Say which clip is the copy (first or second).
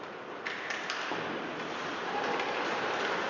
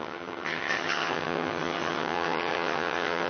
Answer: second